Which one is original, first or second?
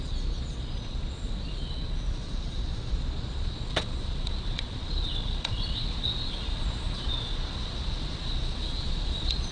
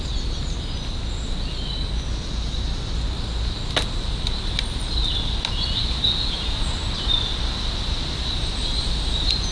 second